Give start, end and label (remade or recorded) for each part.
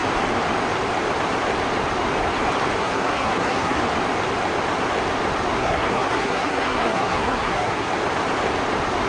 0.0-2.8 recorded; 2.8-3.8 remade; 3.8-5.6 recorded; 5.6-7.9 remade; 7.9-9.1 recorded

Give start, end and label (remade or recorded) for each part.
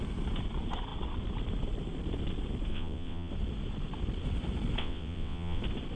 0.0-2.7 recorded; 2.7-3.3 remade; 3.3-4.8 recorded; 4.8-5.6 remade; 5.6-6.0 recorded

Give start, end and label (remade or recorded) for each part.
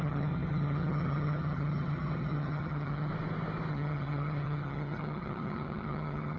0.0-3.1 remade; 3.1-3.7 recorded; 3.7-6.4 remade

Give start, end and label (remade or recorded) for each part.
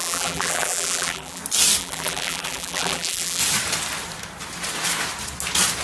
0.0-1.4 remade; 1.4-1.8 recorded; 1.8-3.4 remade; 3.4-5.8 recorded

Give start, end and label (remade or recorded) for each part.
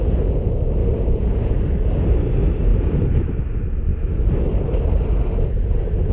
0.0-0.8 recorded; 0.8-1.5 remade; 1.5-2.7 recorded; 2.7-3.4 remade; 3.4-3.9 recorded; 3.9-5.0 remade; 5.0-6.1 recorded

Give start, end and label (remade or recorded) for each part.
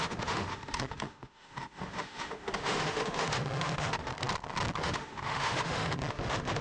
0.0-4.1 remade; 4.1-4.8 recorded; 4.8-6.6 remade